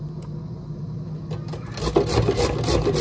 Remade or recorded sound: recorded